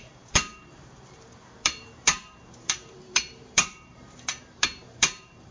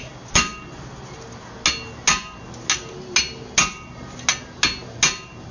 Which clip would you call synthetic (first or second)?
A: first